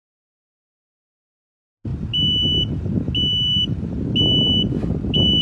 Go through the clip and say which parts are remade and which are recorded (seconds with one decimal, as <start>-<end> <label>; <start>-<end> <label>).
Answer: 0.0-5.4 recorded